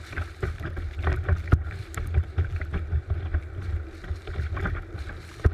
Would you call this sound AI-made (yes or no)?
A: no